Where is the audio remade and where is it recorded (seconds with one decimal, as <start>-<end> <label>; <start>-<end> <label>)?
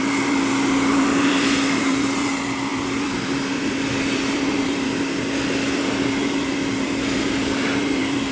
0.0-8.3 remade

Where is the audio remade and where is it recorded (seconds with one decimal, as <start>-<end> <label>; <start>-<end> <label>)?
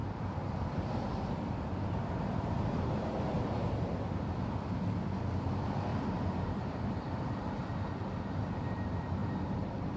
0.0-4.8 remade; 4.8-5.9 recorded; 5.9-7.9 remade; 7.9-9.2 recorded; 9.2-10.0 remade